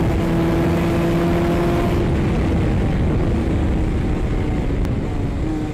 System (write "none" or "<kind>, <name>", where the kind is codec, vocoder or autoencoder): none